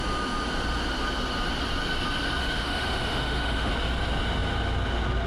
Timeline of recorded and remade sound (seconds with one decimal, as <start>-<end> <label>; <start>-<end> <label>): 0.0-2.4 recorded; 2.4-3.7 remade; 3.7-5.3 recorded